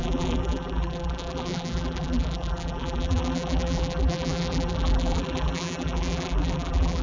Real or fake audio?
fake